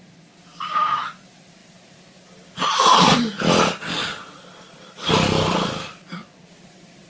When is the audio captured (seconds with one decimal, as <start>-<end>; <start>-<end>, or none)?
0.0-0.5; 1.0-7.1